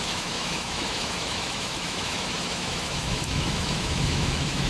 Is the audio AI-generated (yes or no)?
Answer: yes